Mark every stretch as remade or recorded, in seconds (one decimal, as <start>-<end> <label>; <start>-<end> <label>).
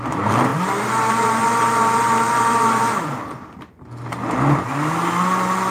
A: 0.0-5.7 recorded